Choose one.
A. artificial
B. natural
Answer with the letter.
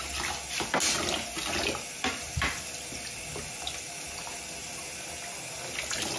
B